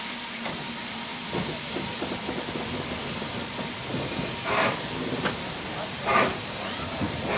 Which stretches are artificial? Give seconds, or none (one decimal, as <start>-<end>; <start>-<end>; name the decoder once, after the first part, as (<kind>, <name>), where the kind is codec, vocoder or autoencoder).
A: none